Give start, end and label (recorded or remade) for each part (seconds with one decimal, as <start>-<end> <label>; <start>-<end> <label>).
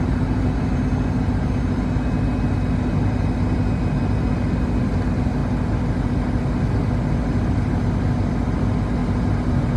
0.0-9.8 recorded